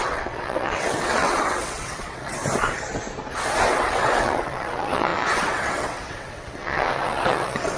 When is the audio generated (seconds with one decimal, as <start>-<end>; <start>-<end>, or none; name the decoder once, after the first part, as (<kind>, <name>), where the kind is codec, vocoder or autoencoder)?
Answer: 0.0-2.4 (vocoder, WaveNeXt); 3.7-7.8